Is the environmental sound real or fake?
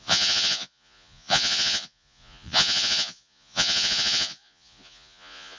fake